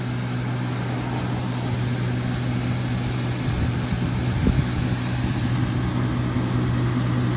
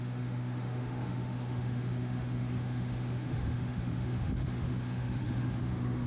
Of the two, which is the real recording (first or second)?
first